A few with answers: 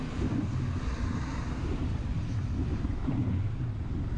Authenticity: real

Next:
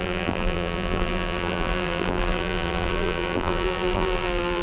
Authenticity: fake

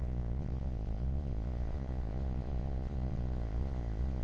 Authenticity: fake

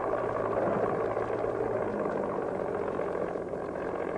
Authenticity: fake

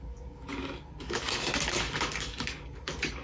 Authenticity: fake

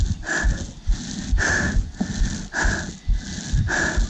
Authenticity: real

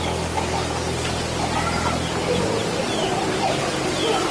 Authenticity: real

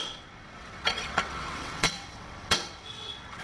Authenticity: fake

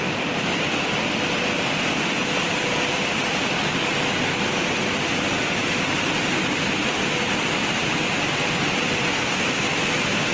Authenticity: fake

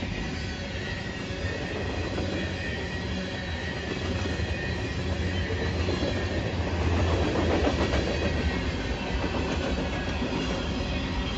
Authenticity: real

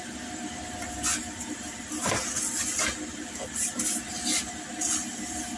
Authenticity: real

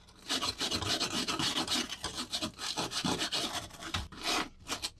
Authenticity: real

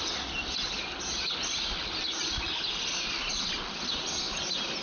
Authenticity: real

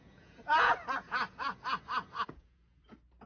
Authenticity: fake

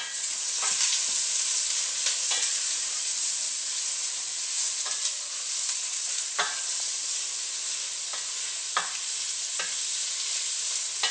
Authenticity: real